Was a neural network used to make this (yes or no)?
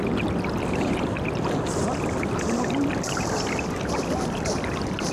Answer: no